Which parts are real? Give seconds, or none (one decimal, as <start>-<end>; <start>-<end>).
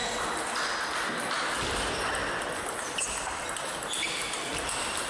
0.0-1.5; 2.2-4.0